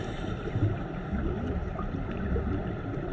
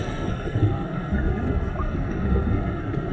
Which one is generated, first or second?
second